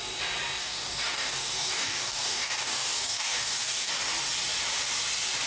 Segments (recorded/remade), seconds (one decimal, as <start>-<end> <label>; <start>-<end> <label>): 0.0-0.6 recorded; 0.6-3.9 remade; 3.9-5.5 recorded